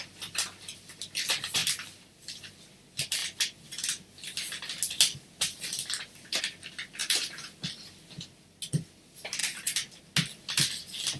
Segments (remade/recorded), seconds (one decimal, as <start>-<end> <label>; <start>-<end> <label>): 0.0-1.6 recorded; 1.6-2.6 remade; 2.6-7.0 recorded; 7.0-7.6 remade; 7.6-9.4 recorded; 9.4-10.0 remade; 10.0-11.2 recorded